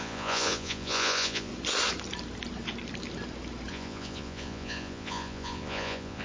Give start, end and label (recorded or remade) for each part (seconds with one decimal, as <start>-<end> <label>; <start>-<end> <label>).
0.0-1.5 remade; 1.5-3.7 recorded; 3.7-6.2 remade